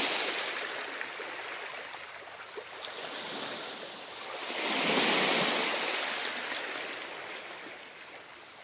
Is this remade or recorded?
recorded